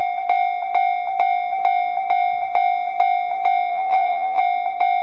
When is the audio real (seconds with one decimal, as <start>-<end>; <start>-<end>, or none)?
0.0-3.7; 4.4-5.0